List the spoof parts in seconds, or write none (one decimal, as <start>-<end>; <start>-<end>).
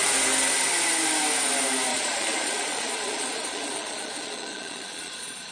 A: 1.9-5.5